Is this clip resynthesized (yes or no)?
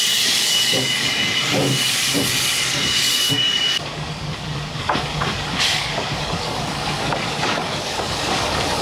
yes